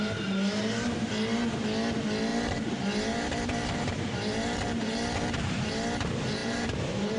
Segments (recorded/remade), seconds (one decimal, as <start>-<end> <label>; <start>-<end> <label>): 0.0-0.6 recorded; 0.6-1.1 remade; 1.1-2.3 recorded; 2.3-5.7 remade; 5.7-6.4 recorded; 6.4-7.2 remade